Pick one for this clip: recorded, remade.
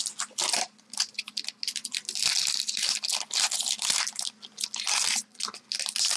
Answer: recorded